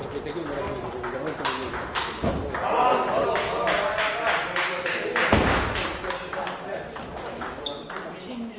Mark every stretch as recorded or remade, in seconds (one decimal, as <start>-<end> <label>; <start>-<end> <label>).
0.0-8.6 recorded